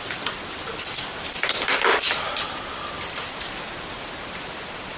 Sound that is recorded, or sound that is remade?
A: remade